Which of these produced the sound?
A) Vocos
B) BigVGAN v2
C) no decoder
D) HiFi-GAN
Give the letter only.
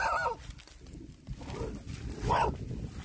C